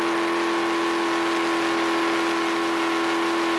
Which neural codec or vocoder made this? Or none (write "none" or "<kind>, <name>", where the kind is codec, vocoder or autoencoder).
none